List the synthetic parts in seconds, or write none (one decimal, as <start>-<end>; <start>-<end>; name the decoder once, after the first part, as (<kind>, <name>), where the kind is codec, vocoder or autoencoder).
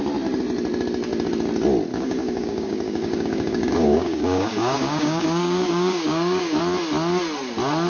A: 1.9-6.6 (codec, DAC)